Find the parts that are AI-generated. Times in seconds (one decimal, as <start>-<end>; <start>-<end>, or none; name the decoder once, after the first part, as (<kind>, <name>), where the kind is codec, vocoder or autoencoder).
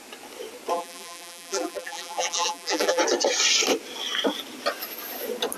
0.7-3.0 (vocoder, BigVGAN v2)